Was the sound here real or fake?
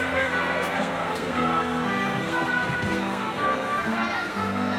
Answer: fake